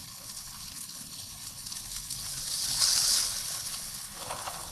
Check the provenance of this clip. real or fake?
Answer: fake